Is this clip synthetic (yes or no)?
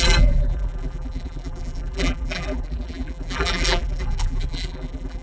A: yes